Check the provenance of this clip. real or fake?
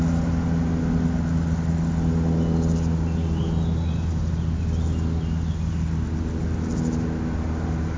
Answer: real